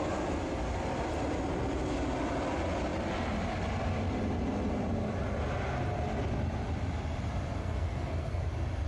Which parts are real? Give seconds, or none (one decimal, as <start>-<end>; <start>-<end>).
0.0-7.6; 8.5-8.9